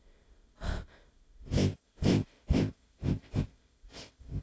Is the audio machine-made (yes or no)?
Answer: yes